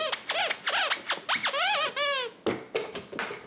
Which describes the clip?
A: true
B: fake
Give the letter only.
A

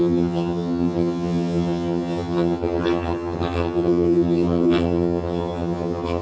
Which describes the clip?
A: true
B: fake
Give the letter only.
B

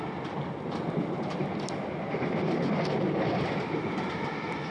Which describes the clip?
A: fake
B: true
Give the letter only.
B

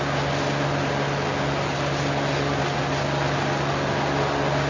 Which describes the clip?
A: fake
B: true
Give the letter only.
B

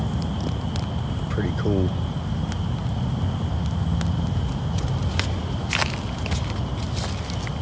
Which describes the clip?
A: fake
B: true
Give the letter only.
B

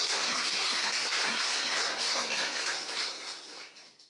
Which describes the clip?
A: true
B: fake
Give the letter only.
B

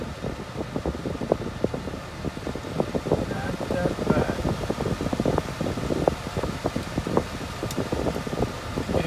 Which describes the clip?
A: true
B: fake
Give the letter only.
A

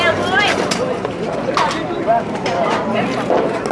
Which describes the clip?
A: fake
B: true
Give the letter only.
B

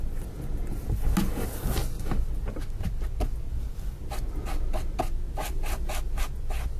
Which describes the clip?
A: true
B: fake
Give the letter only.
A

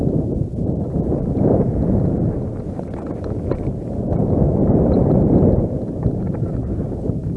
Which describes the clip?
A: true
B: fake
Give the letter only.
B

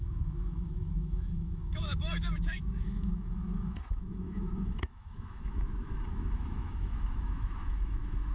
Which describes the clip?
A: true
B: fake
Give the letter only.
B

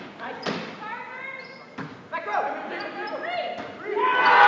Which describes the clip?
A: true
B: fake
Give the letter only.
A